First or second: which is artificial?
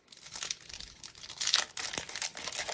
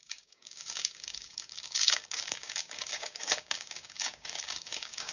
second